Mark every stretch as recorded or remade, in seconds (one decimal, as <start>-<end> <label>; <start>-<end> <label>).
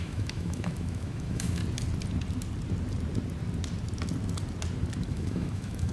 0.0-1.6 remade; 1.6-5.1 recorded; 5.1-5.9 remade